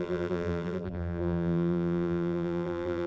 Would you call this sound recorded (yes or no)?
no